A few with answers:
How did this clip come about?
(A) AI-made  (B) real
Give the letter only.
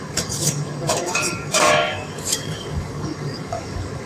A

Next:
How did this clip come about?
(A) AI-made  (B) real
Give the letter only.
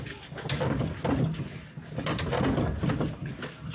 B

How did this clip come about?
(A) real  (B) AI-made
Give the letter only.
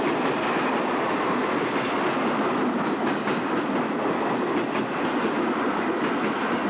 A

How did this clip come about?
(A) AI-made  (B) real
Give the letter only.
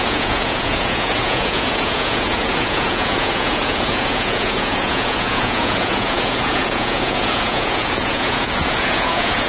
A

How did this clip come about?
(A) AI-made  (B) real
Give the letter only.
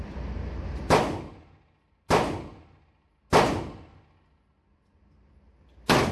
B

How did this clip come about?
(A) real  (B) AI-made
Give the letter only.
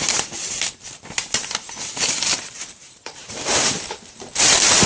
B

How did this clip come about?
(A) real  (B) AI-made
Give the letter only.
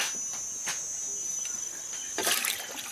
A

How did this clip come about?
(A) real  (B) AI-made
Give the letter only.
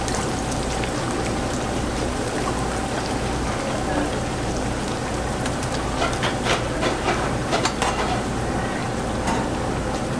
B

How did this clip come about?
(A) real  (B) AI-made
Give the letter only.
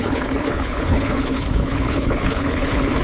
B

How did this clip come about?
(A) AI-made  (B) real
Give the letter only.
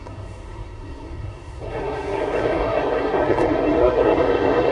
A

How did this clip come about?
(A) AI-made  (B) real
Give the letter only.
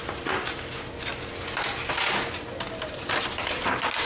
B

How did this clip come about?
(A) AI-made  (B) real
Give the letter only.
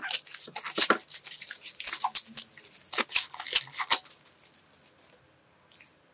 B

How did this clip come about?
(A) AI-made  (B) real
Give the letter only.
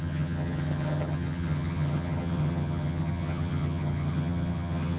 A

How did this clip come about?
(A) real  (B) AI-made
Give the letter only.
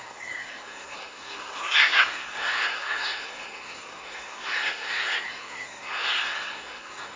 B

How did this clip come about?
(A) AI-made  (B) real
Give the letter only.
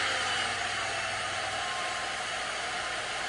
B